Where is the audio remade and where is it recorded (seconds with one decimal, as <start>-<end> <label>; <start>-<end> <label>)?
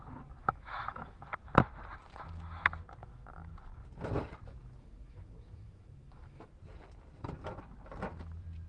0.0-0.4 recorded; 0.4-1.2 remade; 1.2-3.0 recorded; 3.0-3.5 remade; 3.5-4.6 recorded; 4.6-6.5 remade; 6.5-8.7 recorded